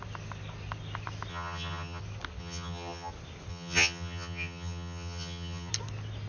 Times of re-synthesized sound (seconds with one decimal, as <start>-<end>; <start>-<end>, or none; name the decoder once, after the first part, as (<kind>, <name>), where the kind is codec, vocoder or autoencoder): 1.3-2.0 (vocoder, HiFi-GAN); 2.4-3.1; 3.5-5.7